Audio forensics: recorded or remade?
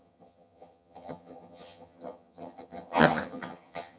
remade